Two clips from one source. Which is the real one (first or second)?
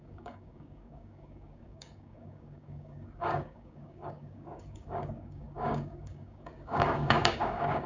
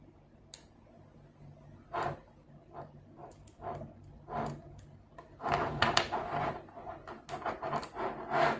second